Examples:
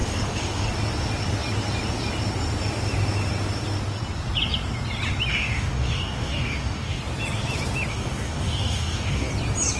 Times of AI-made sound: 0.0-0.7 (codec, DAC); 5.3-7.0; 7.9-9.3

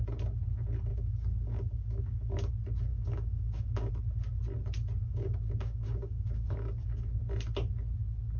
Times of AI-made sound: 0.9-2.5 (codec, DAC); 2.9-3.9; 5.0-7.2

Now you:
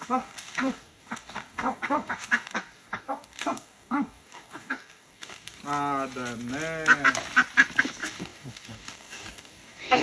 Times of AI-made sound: 0.0-5.6 (codec, DAC); 7.8-10.0

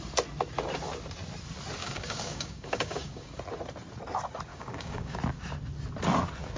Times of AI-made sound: 1.8-3.4 (codec, DAC); 4.5-5.2